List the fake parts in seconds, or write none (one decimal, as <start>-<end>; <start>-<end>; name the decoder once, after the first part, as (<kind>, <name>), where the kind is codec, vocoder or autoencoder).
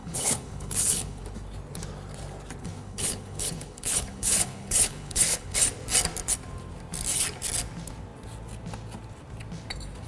0.0-1.2 (codec, HILCodec); 2.6-5.6